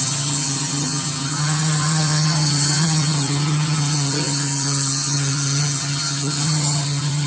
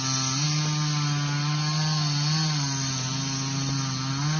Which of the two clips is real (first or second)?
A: second